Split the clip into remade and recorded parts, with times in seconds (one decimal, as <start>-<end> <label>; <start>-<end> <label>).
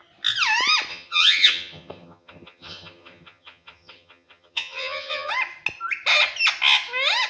0.0-0.9 recorded; 0.9-5.3 remade; 5.3-7.3 recorded